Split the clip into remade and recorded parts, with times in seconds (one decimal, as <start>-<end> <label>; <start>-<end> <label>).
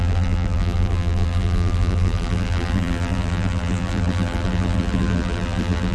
0.0-5.9 remade